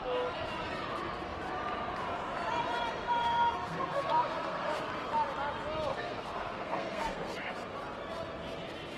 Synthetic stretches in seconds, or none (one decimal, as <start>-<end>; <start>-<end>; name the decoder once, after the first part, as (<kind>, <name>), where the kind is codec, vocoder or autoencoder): 3.2-4.8 (codec, SNAC); 5.9-7.5